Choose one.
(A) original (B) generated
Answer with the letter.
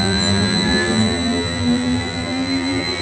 B